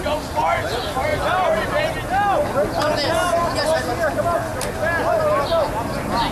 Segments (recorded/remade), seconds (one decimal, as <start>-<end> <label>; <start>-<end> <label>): 0.0-1.1 recorded; 1.1-1.8 remade; 1.8-6.3 recorded